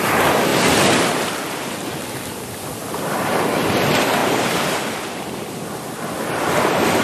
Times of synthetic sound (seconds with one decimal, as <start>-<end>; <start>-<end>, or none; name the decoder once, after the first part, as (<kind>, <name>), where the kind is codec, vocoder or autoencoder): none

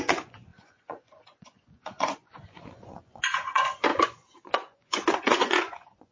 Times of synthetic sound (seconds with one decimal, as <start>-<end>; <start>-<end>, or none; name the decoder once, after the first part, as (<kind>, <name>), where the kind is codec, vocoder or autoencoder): 0.0-6.1 (vocoder, Vocos)

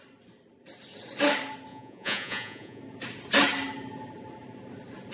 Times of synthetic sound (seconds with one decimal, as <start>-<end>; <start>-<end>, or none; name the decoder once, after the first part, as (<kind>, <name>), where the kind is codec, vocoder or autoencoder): 1.7-2.8 (vocoder, Vocos)

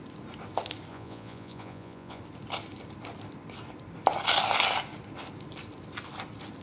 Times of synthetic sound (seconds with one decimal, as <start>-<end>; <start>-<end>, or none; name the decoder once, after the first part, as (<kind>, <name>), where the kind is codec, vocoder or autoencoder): 0.9-2.2 (vocoder, Vocos)